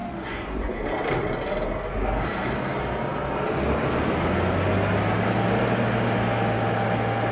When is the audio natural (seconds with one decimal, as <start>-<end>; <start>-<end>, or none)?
0.8-7.3